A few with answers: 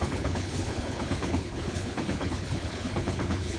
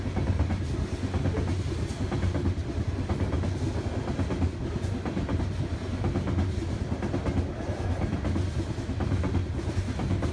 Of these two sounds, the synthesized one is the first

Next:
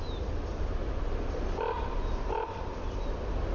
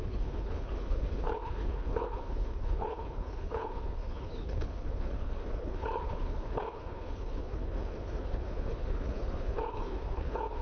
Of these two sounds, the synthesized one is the second